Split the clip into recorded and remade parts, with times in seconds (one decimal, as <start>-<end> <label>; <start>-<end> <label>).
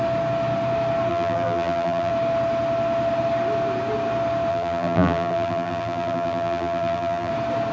0.0-1.1 recorded; 1.1-2.1 remade; 2.1-4.5 recorded; 4.5-7.3 remade; 7.3-7.7 recorded